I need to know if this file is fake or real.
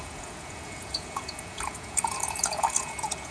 fake